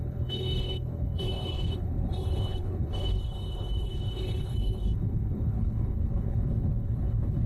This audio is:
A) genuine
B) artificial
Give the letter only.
B